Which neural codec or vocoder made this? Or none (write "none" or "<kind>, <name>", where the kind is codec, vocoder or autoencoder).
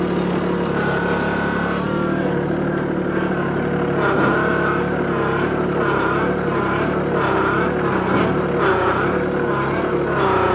none